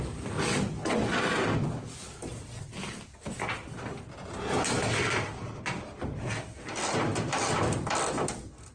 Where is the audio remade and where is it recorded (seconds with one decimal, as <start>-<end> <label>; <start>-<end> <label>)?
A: 0.0-8.7 recorded